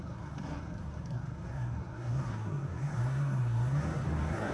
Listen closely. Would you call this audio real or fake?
fake